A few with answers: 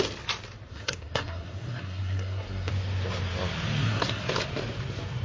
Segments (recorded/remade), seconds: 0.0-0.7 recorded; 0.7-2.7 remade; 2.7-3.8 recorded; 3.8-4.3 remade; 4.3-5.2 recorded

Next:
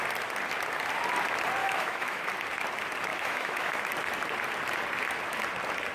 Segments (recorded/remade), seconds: 0.0-1.6 recorded; 1.6-2.3 remade; 2.3-3.1 recorded; 3.1-3.9 remade; 3.9-5.9 recorded

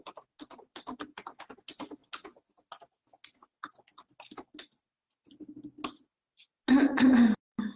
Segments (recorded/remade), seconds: 0.0-7.8 recorded

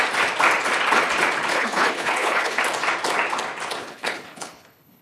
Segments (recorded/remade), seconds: 0.0-1.5 recorded; 1.5-2.6 remade; 2.6-3.8 recorded; 3.8-5.0 remade

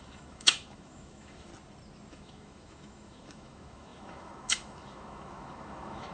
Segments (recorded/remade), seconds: 0.0-1.5 remade; 1.5-2.1 recorded; 2.1-6.1 remade

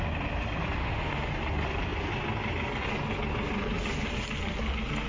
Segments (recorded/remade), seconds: 0.0-0.8 recorded; 0.8-1.3 remade; 1.3-5.1 recorded

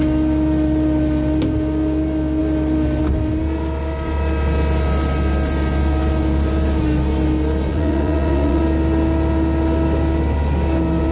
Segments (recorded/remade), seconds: 0.0-7.7 recorded; 7.7-8.6 remade; 8.6-11.1 recorded